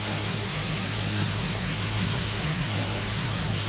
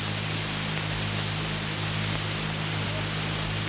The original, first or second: second